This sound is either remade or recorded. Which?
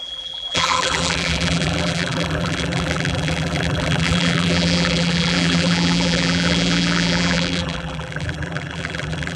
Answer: remade